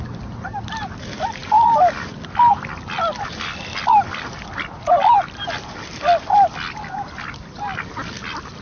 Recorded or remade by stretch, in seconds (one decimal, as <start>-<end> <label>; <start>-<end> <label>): 0.0-8.6 recorded